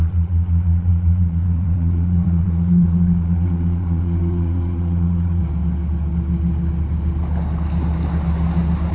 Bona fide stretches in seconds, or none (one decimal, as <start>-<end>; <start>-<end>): 5.4-8.9